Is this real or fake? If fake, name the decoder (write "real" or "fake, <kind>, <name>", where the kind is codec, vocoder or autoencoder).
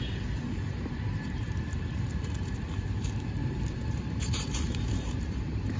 fake, vocoder, BigVGAN v2